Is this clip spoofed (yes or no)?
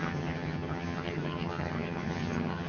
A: yes